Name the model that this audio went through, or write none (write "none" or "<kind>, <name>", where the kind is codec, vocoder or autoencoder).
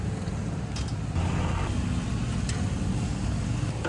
none